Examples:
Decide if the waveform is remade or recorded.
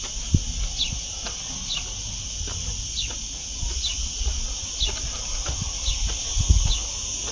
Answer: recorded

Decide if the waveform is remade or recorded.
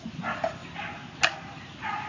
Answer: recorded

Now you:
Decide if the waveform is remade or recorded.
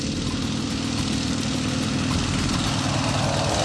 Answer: recorded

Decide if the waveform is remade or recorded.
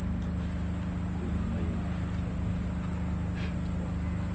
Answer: recorded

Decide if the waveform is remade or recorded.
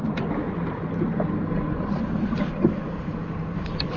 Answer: recorded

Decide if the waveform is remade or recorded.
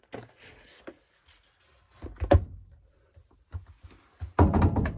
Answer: recorded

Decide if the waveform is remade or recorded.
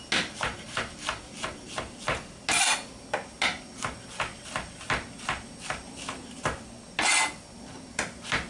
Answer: recorded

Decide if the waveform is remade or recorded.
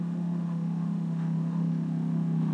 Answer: remade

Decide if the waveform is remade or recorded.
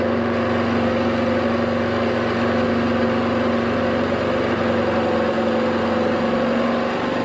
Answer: recorded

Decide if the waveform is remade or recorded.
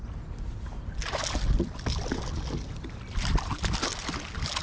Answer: recorded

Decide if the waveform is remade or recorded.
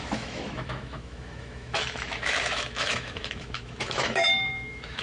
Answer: remade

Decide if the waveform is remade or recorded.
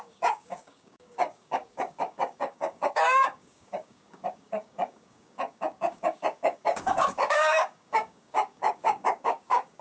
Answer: remade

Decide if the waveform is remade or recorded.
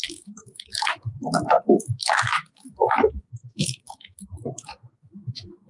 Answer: remade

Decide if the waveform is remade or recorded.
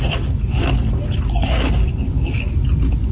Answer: recorded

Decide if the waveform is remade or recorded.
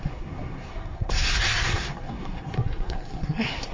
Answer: remade